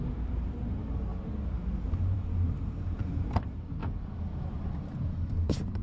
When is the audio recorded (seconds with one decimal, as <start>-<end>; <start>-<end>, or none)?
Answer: 1.1-1.9; 3.8-4.9